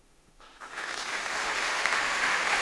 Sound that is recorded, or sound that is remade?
remade